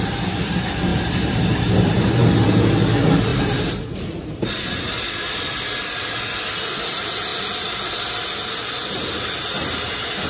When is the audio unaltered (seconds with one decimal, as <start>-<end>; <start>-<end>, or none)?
0.0-0.9; 2.1-3.3; 5.0-10.3